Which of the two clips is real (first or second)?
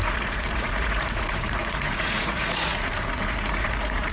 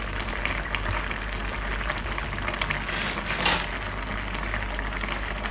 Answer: second